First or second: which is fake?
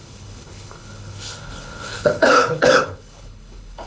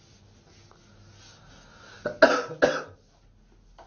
first